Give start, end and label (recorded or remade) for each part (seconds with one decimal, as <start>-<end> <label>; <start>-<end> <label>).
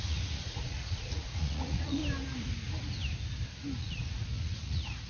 0.0-2.0 remade; 2.0-3.8 recorded; 3.8-5.1 remade